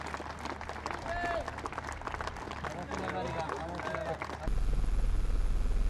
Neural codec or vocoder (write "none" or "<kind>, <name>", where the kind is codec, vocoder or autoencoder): none